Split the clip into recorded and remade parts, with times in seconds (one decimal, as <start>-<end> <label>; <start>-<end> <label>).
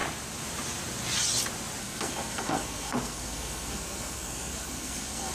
0.0-1.8 recorded; 1.8-5.3 remade